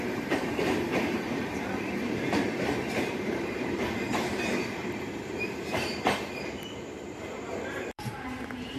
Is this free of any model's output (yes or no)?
no